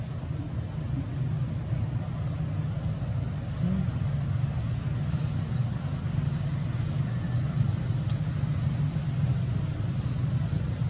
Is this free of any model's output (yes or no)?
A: yes